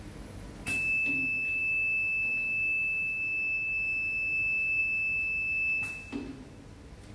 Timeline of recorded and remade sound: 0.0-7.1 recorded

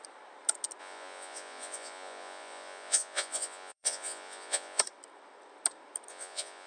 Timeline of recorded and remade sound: 0.0-0.8 recorded; 0.8-4.8 remade; 4.8-6.1 recorded; 6.1-6.7 remade

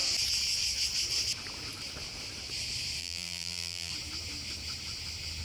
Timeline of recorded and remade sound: 0.0-3.0 recorded; 3.0-3.9 remade; 3.9-5.4 recorded

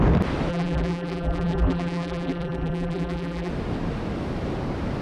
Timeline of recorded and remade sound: 0.0-0.5 recorded; 0.5-3.5 remade; 3.5-5.0 recorded

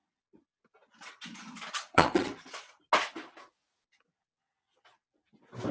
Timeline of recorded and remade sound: 0.0-1.7 recorded; 1.7-2.3 remade; 2.3-5.7 recorded

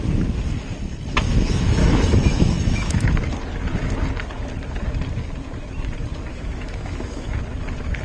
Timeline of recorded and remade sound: 0.0-1.8 recorded; 1.8-3.1 remade; 3.1-6.3 recorded; 6.3-7.3 remade; 7.3-8.0 recorded